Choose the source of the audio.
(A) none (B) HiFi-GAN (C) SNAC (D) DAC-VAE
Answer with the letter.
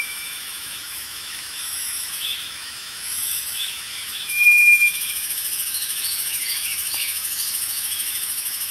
D